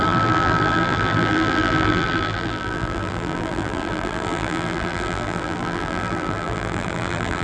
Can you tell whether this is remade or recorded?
remade